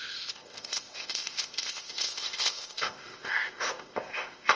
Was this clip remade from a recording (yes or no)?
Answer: yes